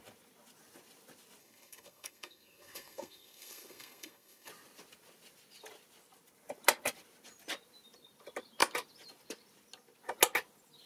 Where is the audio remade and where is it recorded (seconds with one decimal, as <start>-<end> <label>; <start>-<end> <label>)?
0.0-1.4 recorded; 1.4-4.5 remade; 4.5-10.9 recorded